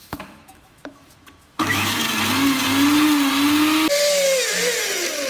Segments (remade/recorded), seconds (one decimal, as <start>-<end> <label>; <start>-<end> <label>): 0.0-2.0 remade; 2.0-5.3 recorded